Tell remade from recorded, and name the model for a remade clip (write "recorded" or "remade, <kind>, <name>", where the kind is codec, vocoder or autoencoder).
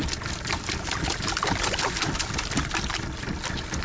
recorded